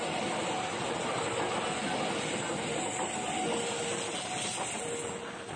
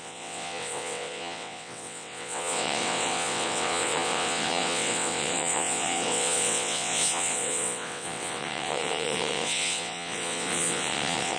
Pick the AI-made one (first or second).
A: second